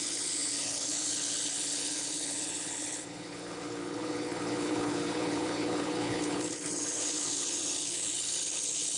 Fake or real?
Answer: fake